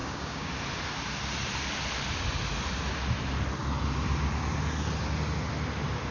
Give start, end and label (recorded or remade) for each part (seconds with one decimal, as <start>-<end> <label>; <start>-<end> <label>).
0.0-0.5 remade; 0.5-6.1 recorded